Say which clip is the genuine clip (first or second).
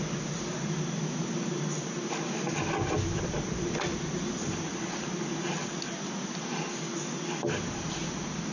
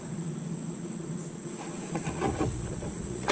first